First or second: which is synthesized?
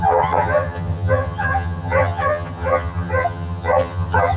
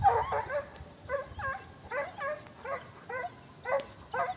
first